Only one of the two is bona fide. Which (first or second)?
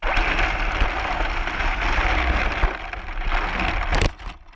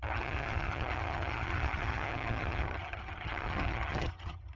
first